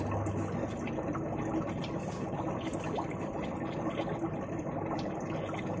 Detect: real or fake real